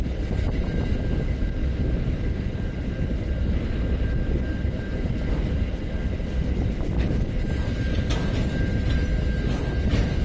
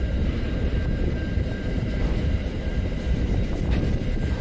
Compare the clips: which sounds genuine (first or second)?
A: first